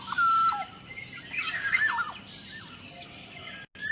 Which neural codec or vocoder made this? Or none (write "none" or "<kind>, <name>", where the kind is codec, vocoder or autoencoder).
none